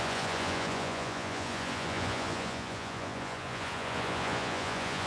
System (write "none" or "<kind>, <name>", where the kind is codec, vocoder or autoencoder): vocoder, Vocos